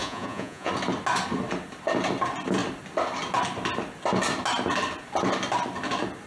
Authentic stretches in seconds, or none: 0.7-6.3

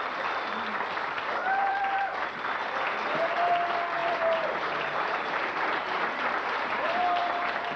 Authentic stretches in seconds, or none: 0.0-1.4; 2.1-4.0

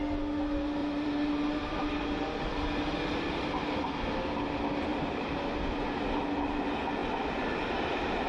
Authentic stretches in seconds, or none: 0.0-0.8; 2.4-4.9; 5.4-8.3